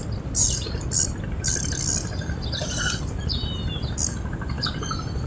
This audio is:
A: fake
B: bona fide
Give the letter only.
B